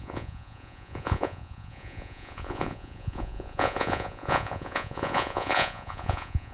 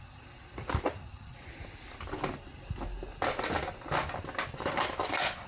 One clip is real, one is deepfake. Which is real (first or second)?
second